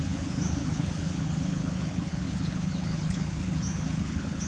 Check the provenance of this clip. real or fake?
fake